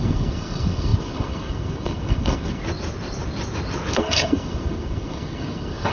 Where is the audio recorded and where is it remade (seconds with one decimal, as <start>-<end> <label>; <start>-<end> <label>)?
0.0-2.6 remade; 2.6-3.9 recorded; 3.9-5.9 remade